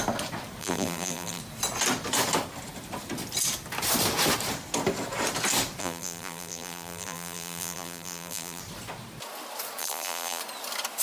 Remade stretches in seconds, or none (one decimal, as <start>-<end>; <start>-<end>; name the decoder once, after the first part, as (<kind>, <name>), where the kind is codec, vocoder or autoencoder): 0.6-1.4 (vocoder, BigVGAN v2); 5.8-8.6; 9.8-10.4